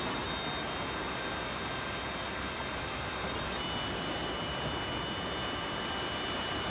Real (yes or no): yes